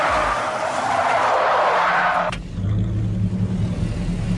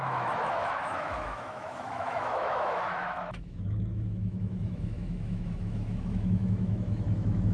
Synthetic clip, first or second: second